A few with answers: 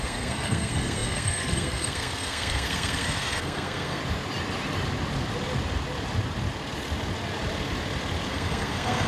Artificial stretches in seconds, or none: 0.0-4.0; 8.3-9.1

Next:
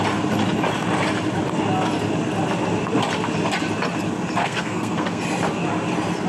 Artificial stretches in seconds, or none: 4.4-5.2

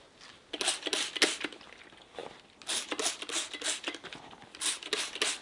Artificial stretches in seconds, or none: none

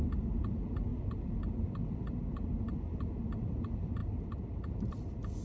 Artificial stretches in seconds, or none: none

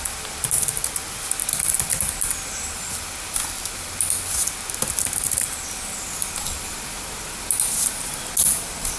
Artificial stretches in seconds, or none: none

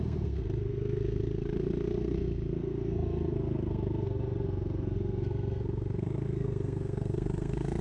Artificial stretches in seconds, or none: 0.0-7.8

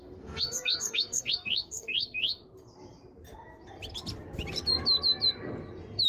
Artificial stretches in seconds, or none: 0.0-2.4